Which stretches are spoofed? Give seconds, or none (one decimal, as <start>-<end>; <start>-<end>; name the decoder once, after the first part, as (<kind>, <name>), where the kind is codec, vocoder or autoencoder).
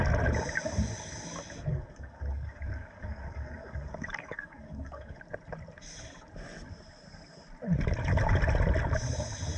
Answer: 1.7-5.2 (codec, DAC)